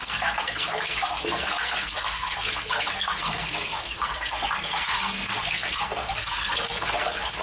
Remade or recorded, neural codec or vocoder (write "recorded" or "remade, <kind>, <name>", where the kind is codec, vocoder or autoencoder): remade, codec, SNAC